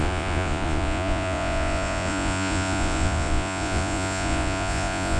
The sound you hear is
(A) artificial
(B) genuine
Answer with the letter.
A